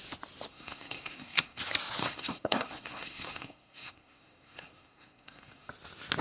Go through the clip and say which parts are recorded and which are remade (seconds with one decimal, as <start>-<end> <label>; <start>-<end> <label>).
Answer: 0.0-0.5 recorded; 0.5-1.6 remade; 1.6-2.0 recorded; 2.0-5.7 remade; 5.7-6.2 recorded

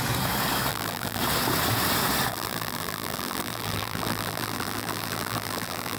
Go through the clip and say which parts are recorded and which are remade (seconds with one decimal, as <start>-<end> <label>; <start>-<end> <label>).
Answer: 0.0-0.7 recorded; 0.7-1.2 remade; 1.2-2.3 recorded; 2.3-6.0 remade